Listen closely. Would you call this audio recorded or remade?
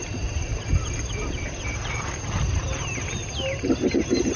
recorded